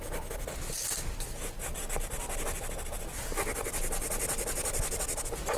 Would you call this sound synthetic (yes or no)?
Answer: no